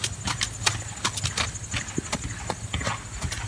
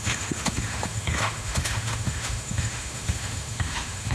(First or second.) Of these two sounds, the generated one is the second